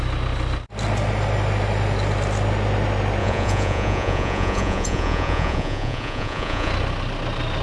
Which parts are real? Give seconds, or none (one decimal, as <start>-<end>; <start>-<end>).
0.0-3.2; 6.7-7.6